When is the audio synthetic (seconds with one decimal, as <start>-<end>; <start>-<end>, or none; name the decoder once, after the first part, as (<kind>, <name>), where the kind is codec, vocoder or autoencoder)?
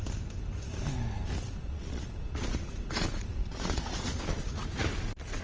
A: 1.6-4.8 (vocoder, Vocos)